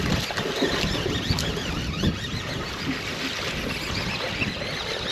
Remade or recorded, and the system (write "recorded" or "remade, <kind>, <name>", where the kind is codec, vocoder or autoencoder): recorded